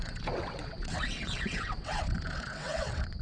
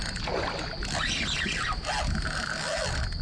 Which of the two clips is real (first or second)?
second